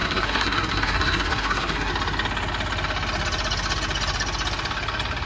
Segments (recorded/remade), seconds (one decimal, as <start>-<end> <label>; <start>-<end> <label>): 0.0-1.9 remade; 1.9-5.3 recorded